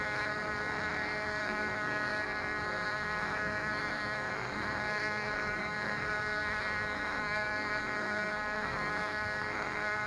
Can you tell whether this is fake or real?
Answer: fake